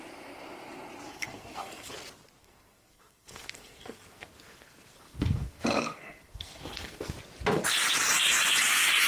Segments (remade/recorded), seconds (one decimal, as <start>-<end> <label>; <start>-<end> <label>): 0.0-1.1 recorded; 1.1-1.9 remade; 1.9-2.4 recorded; 2.4-7.1 remade; 7.1-9.1 recorded